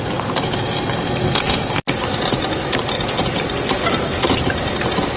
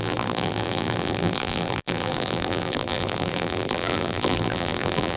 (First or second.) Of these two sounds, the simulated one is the second